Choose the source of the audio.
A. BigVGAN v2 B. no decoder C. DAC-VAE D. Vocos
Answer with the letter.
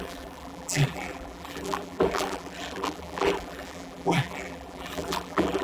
A